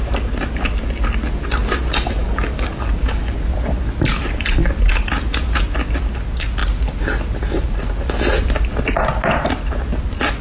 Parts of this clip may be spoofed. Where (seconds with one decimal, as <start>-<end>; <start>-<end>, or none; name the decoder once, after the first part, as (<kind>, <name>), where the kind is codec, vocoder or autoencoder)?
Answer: 2.2-2.9 (codec, DAC)